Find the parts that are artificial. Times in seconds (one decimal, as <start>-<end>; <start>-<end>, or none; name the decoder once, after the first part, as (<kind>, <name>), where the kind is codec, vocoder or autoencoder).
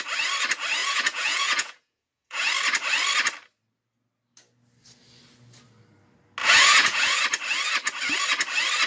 0.8-2.5 (vocoder, Vocos); 6.4-7.2